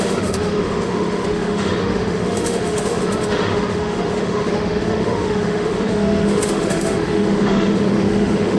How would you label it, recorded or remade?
remade